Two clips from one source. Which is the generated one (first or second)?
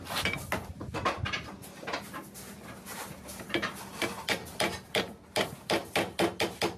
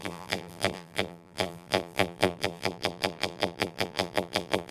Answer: second